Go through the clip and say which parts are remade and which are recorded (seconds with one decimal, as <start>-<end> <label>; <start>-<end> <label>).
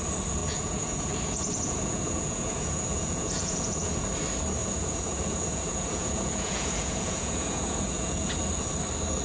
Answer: 0.0-0.4 recorded; 0.4-3.9 remade; 3.9-4.6 recorded; 4.6-8.4 remade; 8.4-9.2 recorded